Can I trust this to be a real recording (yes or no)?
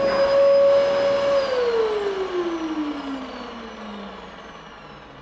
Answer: yes